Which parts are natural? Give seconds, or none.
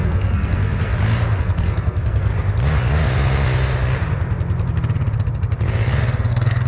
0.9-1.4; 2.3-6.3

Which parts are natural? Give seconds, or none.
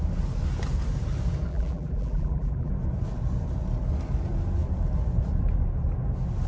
0.0-1.5; 2.7-6.5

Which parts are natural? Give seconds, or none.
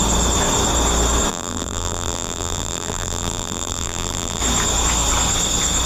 0.0-1.3; 4.4-5.9